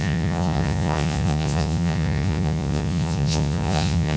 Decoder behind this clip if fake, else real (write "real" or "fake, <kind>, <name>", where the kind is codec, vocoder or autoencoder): fake, vocoder, Vocos